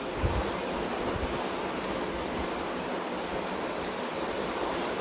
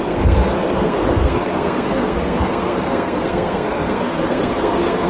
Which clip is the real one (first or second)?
first